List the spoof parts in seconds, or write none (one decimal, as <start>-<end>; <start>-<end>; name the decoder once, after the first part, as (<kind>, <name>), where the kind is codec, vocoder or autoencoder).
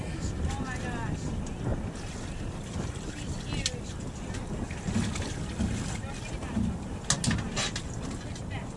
none